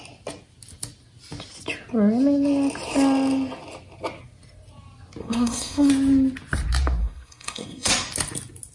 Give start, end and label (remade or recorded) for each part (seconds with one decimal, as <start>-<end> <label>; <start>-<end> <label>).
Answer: 0.0-5.2 recorded; 5.2-5.9 remade; 5.9-7.0 recorded; 7.0-7.9 remade; 7.9-8.7 recorded